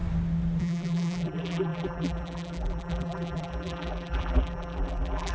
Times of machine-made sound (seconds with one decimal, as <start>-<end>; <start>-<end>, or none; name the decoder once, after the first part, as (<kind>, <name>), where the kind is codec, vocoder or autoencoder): 0.6-5.3 (vocoder, BigVGAN v2)